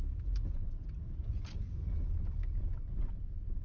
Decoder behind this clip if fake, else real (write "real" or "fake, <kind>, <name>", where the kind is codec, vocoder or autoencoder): real